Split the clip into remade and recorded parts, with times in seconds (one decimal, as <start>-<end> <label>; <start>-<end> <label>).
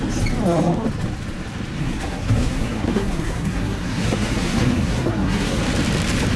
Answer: 0.0-1.8 recorded; 1.8-5.6 remade; 5.6-6.4 recorded